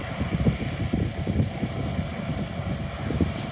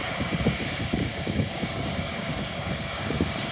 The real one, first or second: first